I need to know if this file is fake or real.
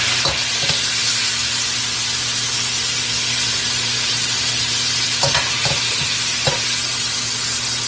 real